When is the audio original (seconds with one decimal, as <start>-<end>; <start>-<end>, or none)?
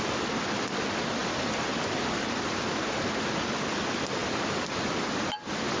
0.0-5.8